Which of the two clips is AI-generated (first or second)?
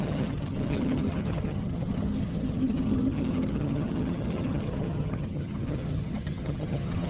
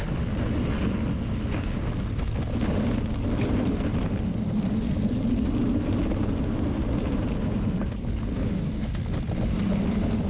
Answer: first